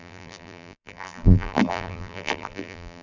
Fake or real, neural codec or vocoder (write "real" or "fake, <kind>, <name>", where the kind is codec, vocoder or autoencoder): fake, vocoder, BigVGAN v2